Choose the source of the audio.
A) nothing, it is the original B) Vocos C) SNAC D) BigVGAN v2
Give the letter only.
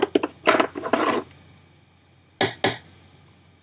A